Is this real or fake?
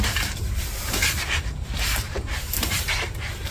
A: fake